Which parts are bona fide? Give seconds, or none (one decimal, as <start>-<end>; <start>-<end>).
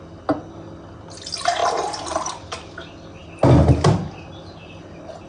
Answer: 0.0-5.3